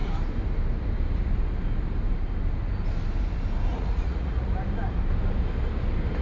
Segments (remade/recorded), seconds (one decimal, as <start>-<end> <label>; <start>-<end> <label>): 0.0-3.7 recorded; 3.7-4.5 remade; 4.5-6.2 recorded